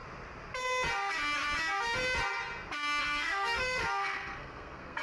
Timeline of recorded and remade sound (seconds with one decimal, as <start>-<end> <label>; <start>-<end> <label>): 0.0-3.0 recorded; 3.0-5.0 remade